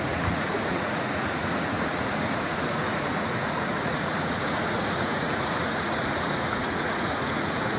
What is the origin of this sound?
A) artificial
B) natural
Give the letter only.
A